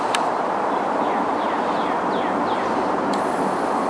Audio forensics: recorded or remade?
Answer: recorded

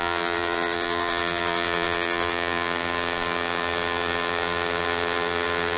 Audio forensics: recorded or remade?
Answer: remade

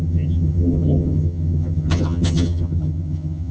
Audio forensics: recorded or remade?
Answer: remade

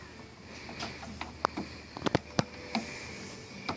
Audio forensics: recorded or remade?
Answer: recorded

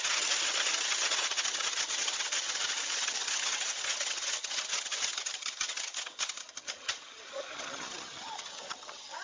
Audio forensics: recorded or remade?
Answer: remade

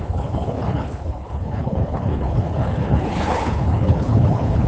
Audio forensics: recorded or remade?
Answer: remade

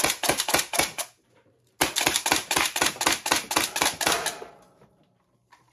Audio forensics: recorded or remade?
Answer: remade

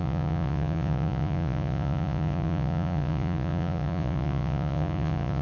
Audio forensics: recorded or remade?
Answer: remade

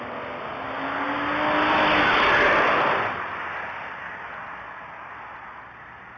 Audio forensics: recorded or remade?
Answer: recorded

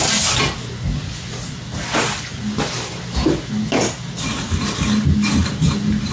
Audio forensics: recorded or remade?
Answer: recorded